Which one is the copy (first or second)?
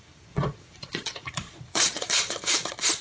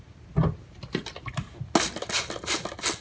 first